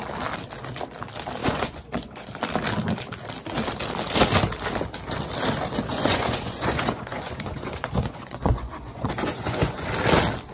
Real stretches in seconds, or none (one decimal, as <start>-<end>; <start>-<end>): 0.0-1.4; 2.3-5.9; 9.9-10.5